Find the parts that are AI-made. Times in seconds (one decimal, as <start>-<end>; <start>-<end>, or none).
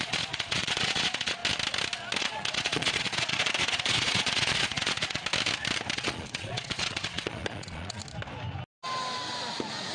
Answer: 0.0-1.4; 2.2-5.2; 5.9-8.0